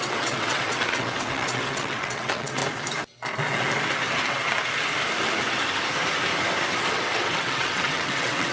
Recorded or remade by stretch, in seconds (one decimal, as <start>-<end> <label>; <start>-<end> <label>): 0.0-2.6 remade; 2.6-6.9 recorded; 6.9-8.5 remade